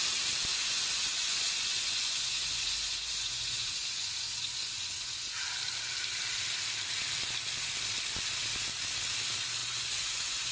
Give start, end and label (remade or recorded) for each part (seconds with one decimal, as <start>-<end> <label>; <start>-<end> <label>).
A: 0.0-0.5 recorded; 0.5-5.3 remade; 5.3-9.6 recorded; 9.6-10.5 remade